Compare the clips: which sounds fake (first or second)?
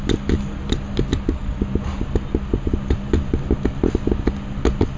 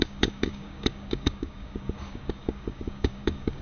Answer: second